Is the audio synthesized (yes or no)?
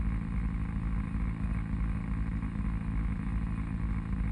no